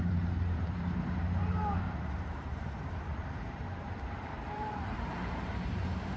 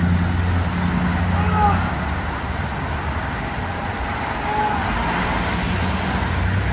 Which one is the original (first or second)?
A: second